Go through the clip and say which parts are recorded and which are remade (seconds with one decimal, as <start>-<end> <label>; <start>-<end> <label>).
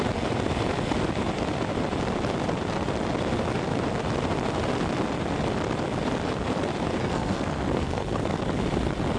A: 0.0-7.0 recorded; 7.0-8.4 remade; 8.4-9.2 recorded